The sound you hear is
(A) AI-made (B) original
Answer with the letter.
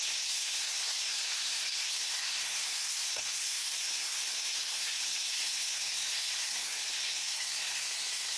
A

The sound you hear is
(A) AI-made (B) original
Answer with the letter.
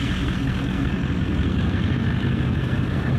A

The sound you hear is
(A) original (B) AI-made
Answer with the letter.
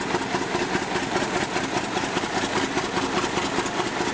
A